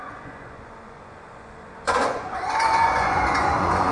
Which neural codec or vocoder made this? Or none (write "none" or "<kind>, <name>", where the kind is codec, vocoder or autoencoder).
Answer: vocoder, Vocos